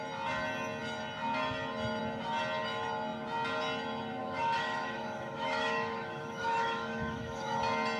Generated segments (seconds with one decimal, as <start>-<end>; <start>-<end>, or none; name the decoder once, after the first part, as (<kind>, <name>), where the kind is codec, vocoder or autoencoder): 4.2-7.6 (autoencoder, DAC-VAE)